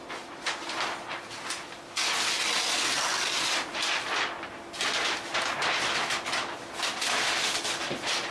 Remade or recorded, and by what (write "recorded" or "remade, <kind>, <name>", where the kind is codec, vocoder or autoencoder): recorded